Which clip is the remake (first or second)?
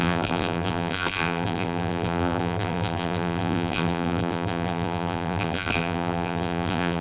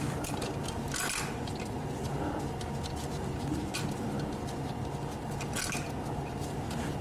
first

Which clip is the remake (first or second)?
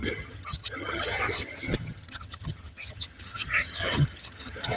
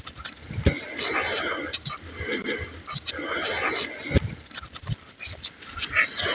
first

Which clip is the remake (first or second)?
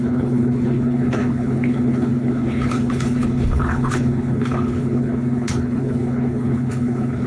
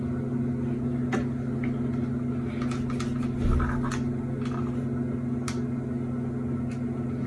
first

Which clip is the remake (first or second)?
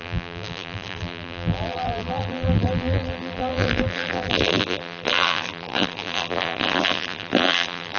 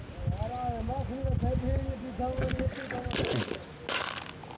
first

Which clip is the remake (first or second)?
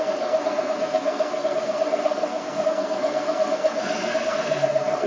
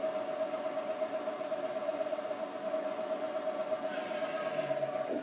first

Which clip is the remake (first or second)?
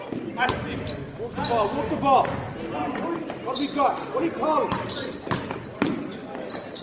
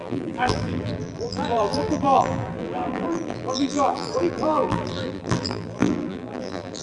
second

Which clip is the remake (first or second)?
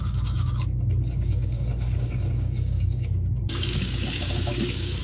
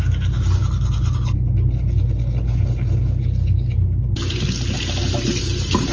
first